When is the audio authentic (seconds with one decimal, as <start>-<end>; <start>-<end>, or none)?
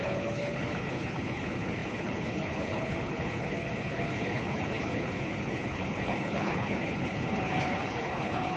none